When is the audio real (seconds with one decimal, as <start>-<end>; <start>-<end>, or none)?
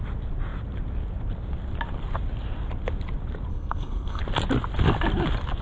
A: 0.0-3.5; 4.2-5.6